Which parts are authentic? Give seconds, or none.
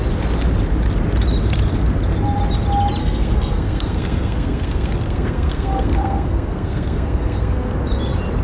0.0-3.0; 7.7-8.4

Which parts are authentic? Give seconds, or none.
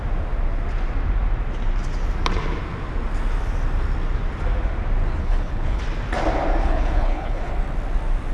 0.0-5.2; 5.8-6.6; 7.5-8.3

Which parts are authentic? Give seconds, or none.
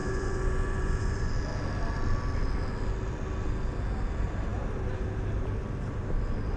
1.3-6.6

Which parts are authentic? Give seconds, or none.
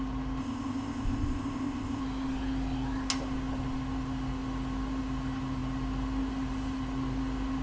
0.0-0.4; 2.0-7.6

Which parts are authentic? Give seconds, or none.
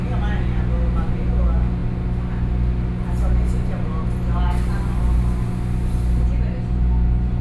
0.0-7.4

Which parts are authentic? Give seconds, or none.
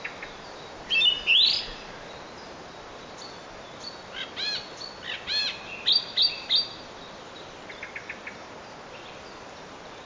0.0-10.1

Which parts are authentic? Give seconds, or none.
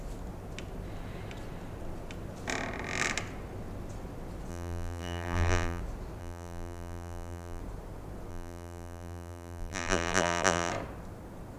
0.0-4.5; 5.8-6.2; 7.6-8.3; 10.7-11.6